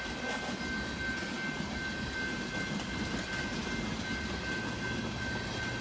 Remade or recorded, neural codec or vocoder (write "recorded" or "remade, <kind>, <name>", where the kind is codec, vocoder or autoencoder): recorded